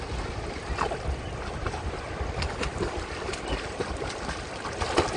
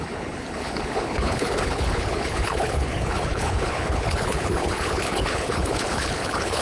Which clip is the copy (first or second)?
second